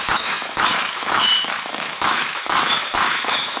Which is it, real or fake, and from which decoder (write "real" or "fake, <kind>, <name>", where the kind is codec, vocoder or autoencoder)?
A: fake, autoencoder, DAC-VAE